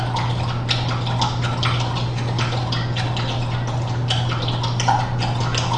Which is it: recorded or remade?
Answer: recorded